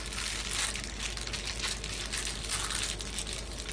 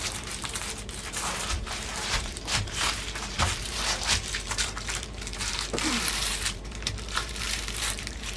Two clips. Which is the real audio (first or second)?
first